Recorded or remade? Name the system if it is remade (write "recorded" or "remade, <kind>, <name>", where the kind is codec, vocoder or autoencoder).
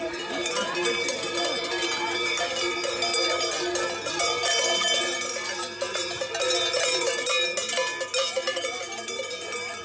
recorded